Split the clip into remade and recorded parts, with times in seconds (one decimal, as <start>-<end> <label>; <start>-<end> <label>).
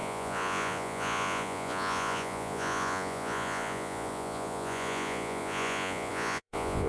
0.0-6.9 remade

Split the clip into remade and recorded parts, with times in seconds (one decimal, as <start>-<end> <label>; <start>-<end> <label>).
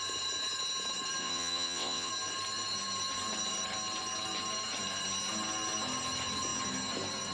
0.0-1.2 recorded; 1.2-2.1 remade; 2.1-7.3 recorded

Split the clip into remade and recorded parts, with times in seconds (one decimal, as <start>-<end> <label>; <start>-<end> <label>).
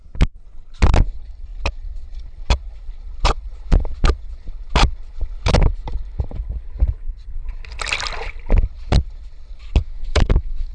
0.0-9.8 recorded; 9.8-10.7 remade